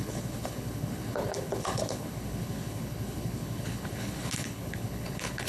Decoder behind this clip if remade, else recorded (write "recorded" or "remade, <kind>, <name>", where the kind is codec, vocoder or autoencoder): remade, codec, HILCodec